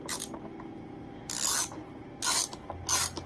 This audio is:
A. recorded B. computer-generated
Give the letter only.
A